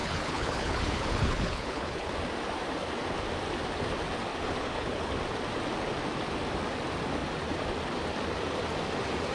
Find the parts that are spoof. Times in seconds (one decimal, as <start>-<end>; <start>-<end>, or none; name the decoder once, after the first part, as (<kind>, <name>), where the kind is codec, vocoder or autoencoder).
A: 0.0-2.1 (codec, HILCodec); 4.3-5.1